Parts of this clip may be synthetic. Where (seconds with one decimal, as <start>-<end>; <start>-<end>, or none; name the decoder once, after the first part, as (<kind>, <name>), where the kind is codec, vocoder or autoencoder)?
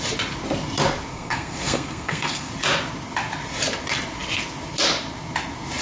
1.1-2.5 (codec, SNAC)